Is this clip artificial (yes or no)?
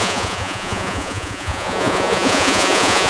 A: yes